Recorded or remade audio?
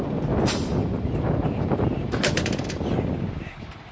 recorded